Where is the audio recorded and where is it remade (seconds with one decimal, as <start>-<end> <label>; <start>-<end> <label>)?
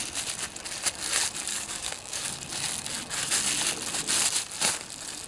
0.0-1.5 recorded; 1.5-2.3 remade; 2.3-5.3 recorded